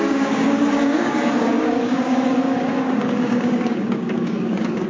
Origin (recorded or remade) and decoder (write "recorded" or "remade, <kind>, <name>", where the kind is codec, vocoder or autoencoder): remade, codec, DAC